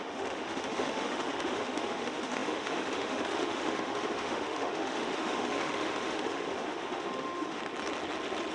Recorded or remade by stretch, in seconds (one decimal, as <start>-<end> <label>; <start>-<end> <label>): 0.0-7.6 remade; 7.6-8.5 recorded